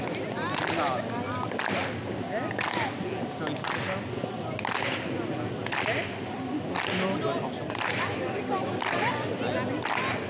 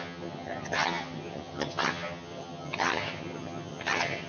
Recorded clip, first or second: first